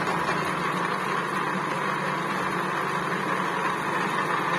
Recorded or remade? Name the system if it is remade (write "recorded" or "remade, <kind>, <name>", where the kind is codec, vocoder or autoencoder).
recorded